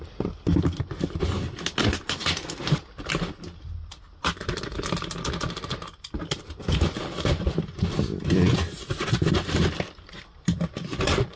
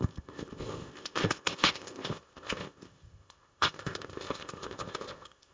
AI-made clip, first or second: second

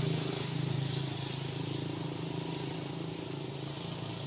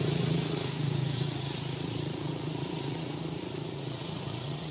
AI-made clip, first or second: second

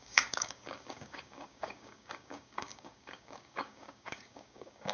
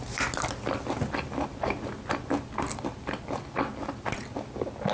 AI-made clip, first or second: first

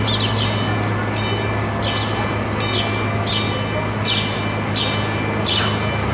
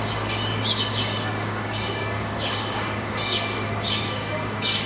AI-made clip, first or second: second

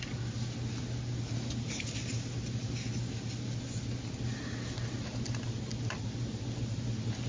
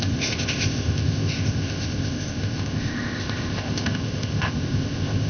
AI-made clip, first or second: second